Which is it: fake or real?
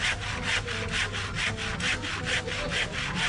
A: real